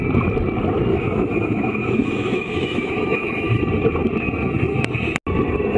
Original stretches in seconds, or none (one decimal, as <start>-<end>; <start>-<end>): 0.0-0.9; 3.6-5.8